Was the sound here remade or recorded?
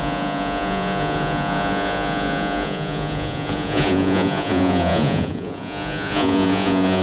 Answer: remade